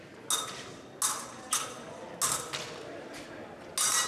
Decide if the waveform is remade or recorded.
recorded